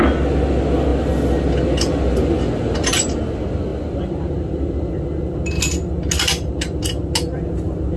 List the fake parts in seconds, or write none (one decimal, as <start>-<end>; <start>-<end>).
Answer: none